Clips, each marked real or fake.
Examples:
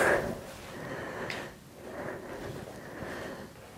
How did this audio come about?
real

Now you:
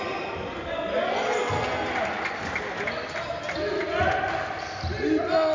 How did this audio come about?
real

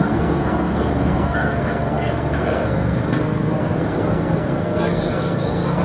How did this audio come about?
fake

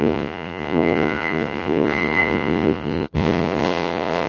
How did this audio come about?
fake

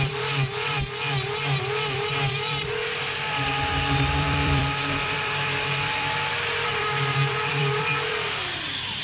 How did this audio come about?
fake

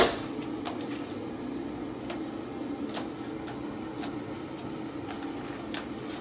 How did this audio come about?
real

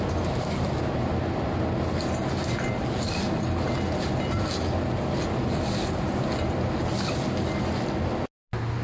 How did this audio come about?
real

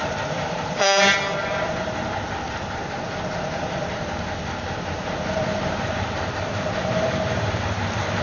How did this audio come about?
fake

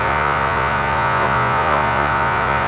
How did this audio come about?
fake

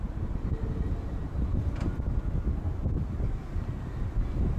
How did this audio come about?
real